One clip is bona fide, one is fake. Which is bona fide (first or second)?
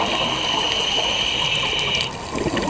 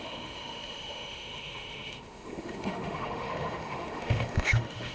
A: first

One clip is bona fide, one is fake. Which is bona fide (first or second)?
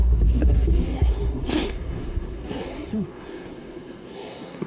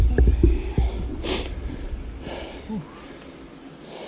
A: second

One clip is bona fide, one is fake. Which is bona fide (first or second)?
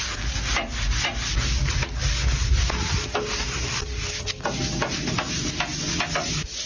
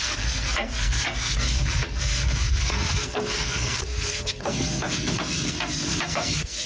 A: first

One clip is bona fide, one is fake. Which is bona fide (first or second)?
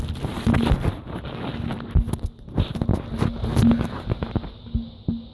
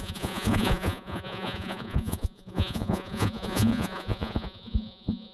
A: first